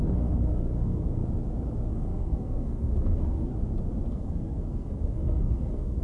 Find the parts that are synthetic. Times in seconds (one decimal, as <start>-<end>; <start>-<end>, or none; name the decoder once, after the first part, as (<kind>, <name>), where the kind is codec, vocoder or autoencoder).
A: 0.0-1.2 (codec, SNAC); 1.9-3.5; 4.1-6.0